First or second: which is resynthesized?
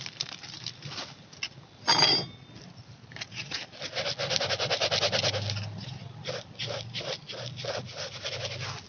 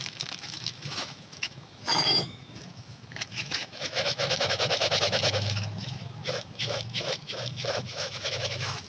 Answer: second